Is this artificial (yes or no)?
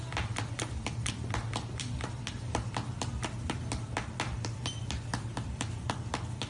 no